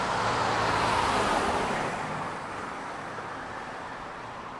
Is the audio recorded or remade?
remade